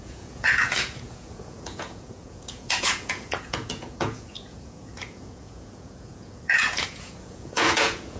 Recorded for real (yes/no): no